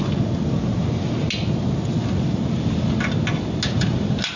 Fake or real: real